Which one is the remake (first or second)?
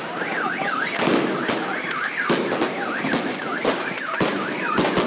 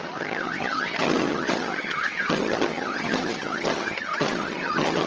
second